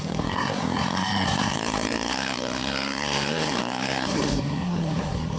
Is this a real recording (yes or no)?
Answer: no